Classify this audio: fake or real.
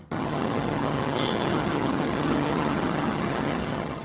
fake